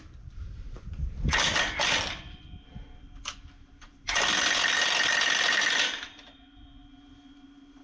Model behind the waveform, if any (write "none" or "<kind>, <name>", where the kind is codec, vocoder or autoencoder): vocoder, BigVGAN v2